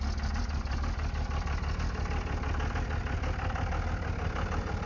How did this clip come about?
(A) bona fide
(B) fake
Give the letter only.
A